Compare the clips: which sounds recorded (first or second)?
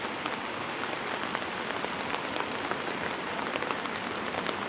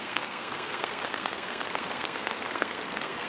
first